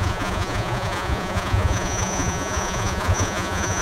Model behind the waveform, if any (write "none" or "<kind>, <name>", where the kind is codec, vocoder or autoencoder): vocoder, Vocos